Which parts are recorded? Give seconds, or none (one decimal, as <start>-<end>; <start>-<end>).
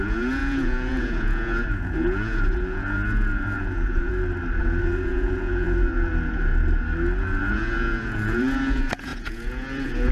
4.1-4.6; 6.5-7.2